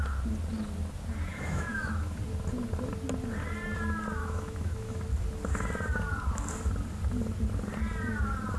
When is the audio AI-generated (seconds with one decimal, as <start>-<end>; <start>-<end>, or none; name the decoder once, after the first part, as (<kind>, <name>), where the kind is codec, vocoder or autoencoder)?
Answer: 1.3-2.2 (autoencoder, DAC-VAE); 4.2-5.0

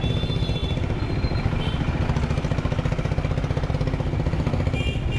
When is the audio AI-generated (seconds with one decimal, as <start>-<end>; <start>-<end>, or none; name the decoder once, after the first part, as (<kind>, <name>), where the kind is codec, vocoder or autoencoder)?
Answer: none

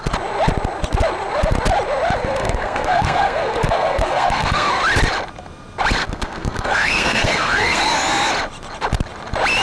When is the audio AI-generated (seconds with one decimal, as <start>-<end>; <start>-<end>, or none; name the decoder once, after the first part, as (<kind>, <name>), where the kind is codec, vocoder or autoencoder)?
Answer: 2.4-4.7 (codec, SNAC); 6.0-7.9